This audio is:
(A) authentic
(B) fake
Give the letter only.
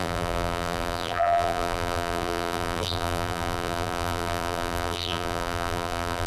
B